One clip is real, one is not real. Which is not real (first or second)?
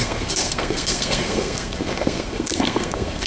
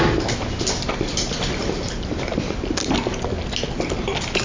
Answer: first